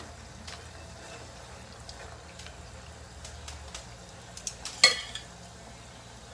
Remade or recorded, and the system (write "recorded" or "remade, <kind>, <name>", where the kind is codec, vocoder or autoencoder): recorded